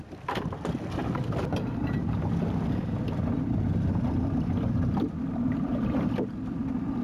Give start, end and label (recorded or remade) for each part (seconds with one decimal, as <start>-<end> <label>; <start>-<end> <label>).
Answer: 0.0-7.0 remade